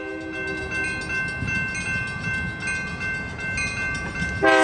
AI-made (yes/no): no